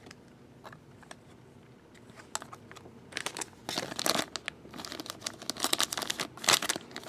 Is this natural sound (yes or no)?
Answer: yes